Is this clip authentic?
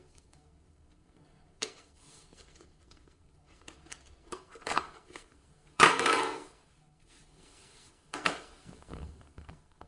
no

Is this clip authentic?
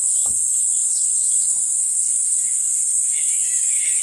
no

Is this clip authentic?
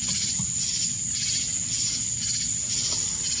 yes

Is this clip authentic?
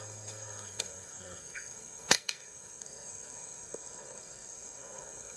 no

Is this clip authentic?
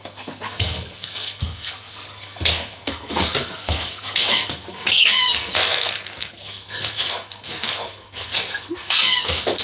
no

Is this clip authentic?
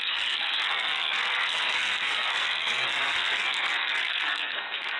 no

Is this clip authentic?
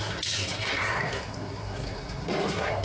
no